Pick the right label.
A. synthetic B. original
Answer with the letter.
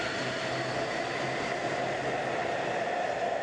B